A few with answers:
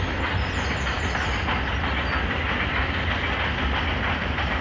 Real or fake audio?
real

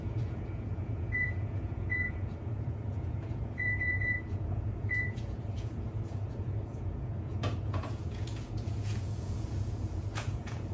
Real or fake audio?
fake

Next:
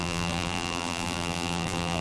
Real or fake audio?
fake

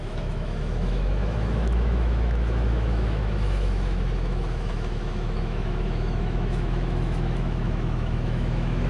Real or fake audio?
fake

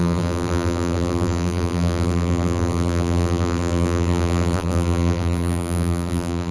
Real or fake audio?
fake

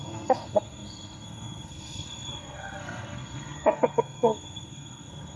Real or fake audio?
fake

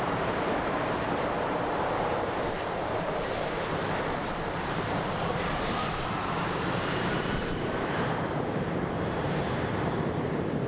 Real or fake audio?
fake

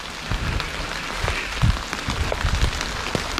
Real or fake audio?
real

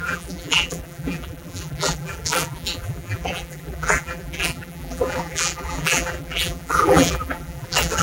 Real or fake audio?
fake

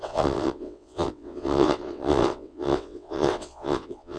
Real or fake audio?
fake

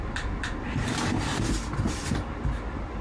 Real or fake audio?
real